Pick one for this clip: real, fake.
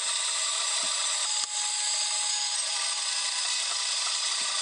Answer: real